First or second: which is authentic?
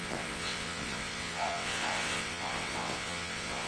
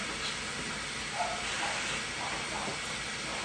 second